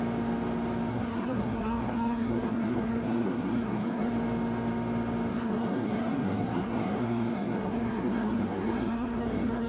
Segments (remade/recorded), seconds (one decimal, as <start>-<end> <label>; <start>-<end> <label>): 0.0-0.9 recorded; 0.9-4.1 remade; 4.1-5.3 recorded; 5.3-9.7 remade